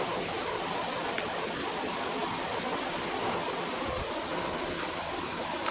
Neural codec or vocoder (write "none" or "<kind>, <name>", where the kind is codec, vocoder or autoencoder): none